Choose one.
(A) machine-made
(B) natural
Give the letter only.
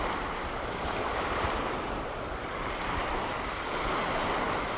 B